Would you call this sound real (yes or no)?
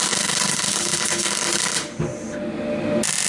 yes